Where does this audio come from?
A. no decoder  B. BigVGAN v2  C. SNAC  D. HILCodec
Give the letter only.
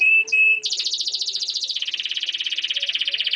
A